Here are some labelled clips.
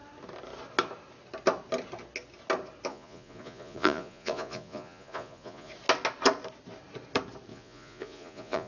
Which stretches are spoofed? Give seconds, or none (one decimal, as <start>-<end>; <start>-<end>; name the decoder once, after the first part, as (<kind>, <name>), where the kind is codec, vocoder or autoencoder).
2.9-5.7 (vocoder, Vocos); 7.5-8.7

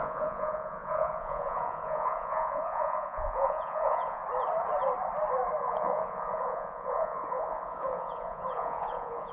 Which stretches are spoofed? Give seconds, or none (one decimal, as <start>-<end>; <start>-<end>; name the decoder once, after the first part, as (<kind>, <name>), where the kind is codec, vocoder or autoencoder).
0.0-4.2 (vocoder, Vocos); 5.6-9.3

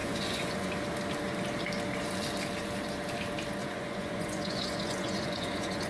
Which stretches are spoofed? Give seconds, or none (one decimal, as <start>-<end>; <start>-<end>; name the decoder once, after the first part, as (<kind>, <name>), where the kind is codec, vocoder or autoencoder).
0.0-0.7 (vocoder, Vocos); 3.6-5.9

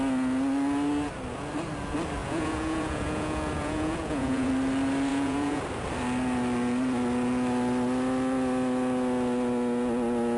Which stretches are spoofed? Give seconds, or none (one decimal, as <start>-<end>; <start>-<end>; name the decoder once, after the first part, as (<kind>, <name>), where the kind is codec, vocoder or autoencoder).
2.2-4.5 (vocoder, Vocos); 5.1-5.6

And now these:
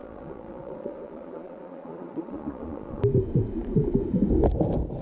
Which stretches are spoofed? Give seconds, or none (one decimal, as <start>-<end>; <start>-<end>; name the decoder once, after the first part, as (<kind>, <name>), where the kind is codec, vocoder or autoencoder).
0.0-3.0 (vocoder, Vocos)

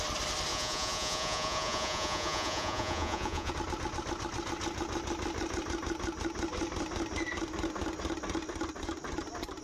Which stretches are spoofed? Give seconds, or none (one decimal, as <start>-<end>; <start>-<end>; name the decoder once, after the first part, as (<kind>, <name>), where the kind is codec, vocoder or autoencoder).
0.5-3.5 (vocoder, Vocos)

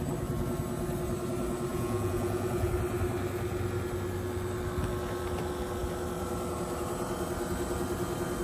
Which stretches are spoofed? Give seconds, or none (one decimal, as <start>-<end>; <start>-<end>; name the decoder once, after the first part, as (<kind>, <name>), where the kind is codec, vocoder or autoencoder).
1.7-2.7 (vocoder, Vocos)

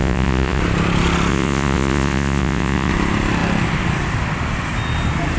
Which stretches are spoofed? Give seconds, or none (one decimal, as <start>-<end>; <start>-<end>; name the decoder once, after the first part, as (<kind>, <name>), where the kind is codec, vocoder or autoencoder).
0.0-0.6 (vocoder, Vocos); 1.3-2.9